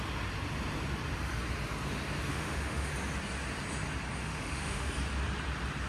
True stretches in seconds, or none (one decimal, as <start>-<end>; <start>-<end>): 0.0-2.3; 2.9-4.2; 4.9-5.9

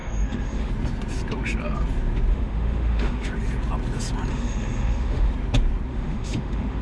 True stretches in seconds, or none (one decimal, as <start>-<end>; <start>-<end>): 0.7-2.3; 3.3-4.3; 5.3-5.9

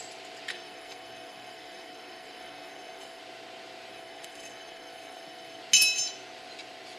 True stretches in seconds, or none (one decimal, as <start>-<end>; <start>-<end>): 0.0-0.5; 3.2-3.9; 5.6-7.0

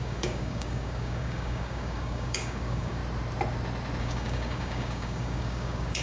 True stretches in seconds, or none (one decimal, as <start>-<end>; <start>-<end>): 3.0-4.0

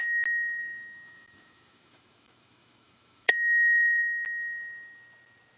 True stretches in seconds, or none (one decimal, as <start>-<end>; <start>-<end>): 0.0-0.6; 4.0-5.6

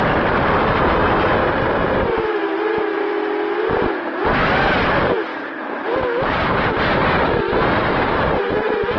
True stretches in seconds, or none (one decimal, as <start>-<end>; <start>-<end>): 0.0-1.4; 3.1-5.3; 6.8-7.8

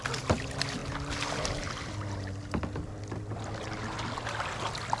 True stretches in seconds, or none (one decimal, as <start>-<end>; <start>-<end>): 0.0-5.0